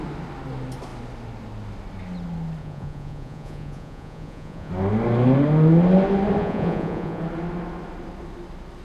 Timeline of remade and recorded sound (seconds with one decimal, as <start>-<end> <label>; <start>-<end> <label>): 0.0-2.6 recorded; 2.6-4.7 remade; 4.7-6.4 recorded; 6.4-7.2 remade; 7.2-8.8 recorded